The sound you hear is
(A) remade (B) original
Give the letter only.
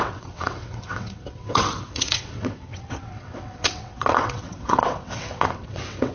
A